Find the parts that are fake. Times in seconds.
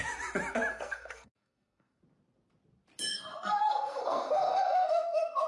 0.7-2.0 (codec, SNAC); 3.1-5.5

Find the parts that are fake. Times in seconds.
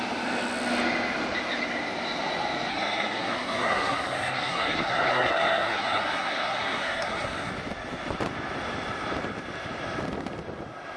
2.7-7.5 (codec, SNAC)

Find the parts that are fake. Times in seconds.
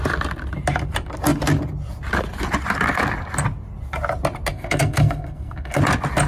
4.5-5.8 (codec, SNAC)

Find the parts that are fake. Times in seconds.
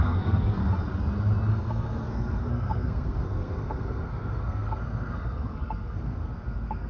0.0-0.6 (codec, SNAC); 1.5-6.9